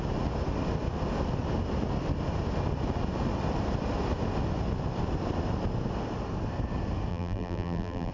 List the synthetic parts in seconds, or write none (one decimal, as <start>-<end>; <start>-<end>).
7.1-8.1